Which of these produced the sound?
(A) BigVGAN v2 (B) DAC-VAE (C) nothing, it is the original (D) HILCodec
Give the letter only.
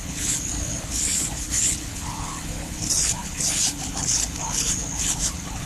D